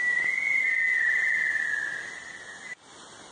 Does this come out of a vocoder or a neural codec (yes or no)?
no